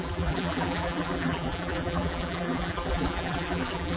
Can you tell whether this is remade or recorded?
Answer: remade